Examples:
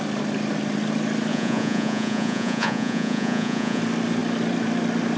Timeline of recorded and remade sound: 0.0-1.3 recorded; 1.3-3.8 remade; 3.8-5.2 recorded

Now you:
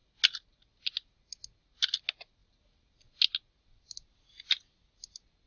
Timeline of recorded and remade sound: 0.0-5.5 recorded

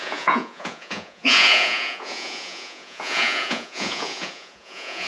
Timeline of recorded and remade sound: 0.0-5.1 remade